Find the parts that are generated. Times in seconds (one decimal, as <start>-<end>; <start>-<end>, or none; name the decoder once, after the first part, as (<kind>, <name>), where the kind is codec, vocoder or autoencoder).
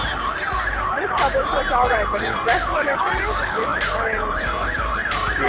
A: none